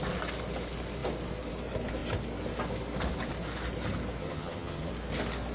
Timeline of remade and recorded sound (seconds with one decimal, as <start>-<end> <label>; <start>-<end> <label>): 0.0-4.2 recorded; 4.2-4.9 remade; 4.9-5.5 recorded